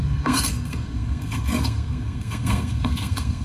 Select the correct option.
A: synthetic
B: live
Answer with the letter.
A